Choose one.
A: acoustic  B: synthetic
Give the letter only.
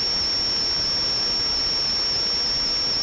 A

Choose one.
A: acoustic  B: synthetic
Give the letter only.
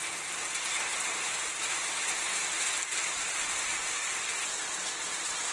A